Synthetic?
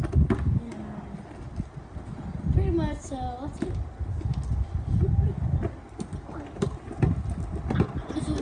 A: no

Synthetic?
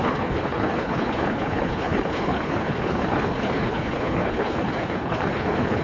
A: yes